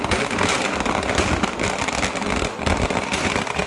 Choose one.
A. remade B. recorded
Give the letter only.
B